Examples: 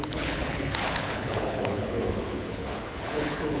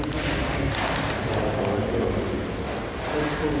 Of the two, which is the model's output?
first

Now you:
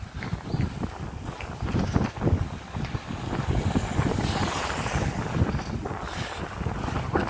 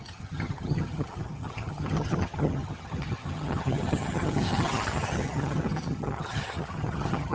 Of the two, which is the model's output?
second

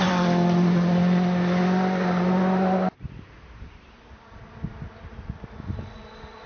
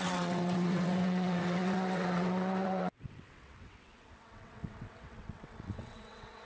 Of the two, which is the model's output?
second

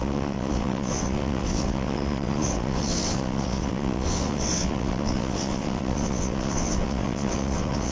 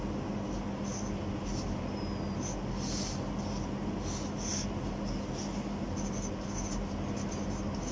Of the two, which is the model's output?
first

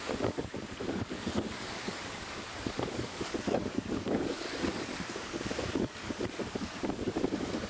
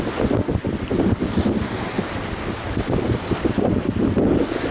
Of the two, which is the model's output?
first